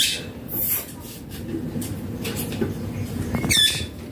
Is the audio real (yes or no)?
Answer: yes